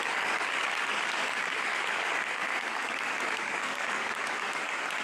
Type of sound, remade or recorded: remade